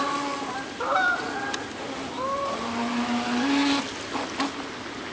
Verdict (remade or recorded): recorded